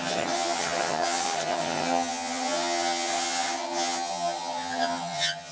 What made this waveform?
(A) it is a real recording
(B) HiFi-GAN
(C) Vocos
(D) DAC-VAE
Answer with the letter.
B